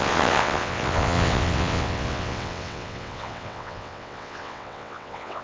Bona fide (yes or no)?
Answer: no